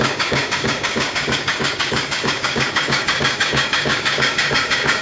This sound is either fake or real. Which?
fake